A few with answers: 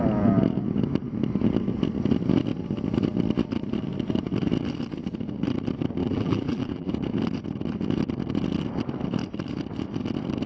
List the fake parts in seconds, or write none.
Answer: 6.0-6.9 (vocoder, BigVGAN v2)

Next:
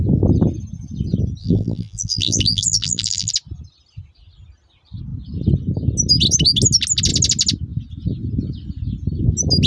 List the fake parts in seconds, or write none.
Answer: 1.4-3.3 (vocoder, BigVGAN v2)

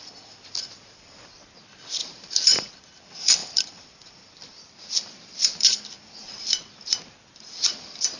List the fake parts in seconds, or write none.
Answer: 2.0-2.7 (vocoder, BigVGAN v2); 3.4-6.0

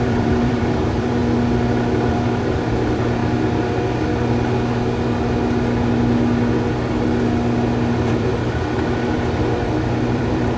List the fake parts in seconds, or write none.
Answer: 0.0-1.2 (vocoder, BigVGAN v2); 2.1-3.2; 7.9-8.3; 9.4-10.6

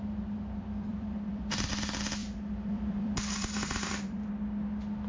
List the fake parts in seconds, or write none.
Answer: 0.9-1.7 (vocoder, BigVGAN v2); 2.2-4.3

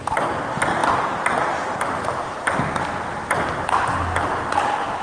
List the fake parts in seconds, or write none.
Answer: none

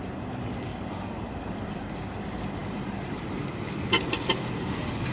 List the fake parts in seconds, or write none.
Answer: 0.7-1.9 (vocoder, BigVGAN v2); 2.6-3.3

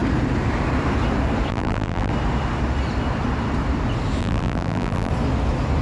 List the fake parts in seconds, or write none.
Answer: 1.5-2.1 (vocoder, BigVGAN v2); 4.2-5.1